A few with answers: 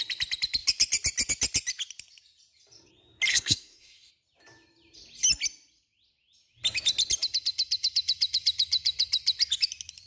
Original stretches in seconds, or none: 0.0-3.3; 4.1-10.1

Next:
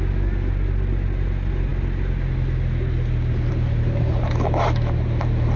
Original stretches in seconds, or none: 0.0-5.6

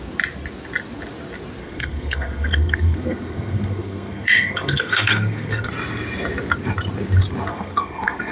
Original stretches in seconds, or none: 0.0-1.6; 5.7-7.5